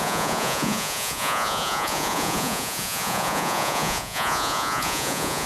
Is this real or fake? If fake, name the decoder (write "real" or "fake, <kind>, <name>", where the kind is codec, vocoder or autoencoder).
fake, vocoder, Vocos